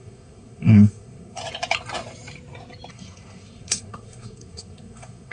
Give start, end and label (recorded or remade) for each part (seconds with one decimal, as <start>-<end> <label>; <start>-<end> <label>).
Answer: 0.0-1.4 remade; 1.4-2.9 recorded; 2.9-5.3 remade